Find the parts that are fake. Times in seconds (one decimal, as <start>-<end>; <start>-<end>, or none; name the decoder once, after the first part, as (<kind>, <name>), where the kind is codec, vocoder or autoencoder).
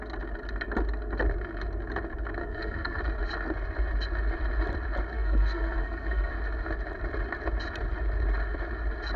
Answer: 2.4-3.0 (codec, SNAC); 5.1-6.3